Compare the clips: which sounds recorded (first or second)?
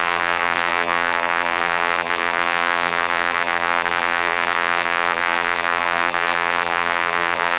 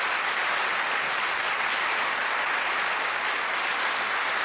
second